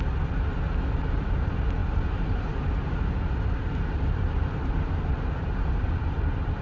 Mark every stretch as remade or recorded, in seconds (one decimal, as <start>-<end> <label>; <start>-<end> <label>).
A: 0.0-6.6 recorded